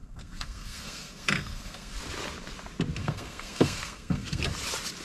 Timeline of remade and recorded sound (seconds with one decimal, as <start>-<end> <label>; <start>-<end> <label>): 0.0-2.0 remade; 2.0-3.0 recorded; 3.0-4.4 remade; 4.4-5.0 recorded